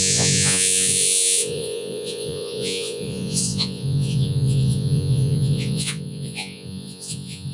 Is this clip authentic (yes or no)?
no